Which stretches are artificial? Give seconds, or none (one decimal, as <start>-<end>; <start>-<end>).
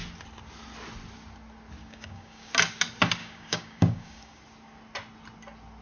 1.8-2.5; 3.2-4.4